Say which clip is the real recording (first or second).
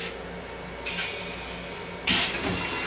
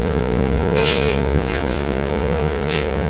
first